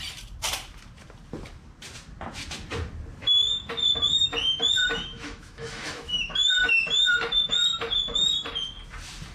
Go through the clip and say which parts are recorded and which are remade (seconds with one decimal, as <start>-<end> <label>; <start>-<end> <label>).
0.0-3.2 recorded; 3.2-3.7 remade; 3.7-4.8 recorded; 4.8-7.5 remade; 7.5-9.3 recorded